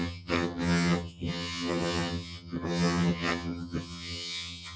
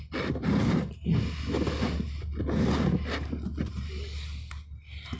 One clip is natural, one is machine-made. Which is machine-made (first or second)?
first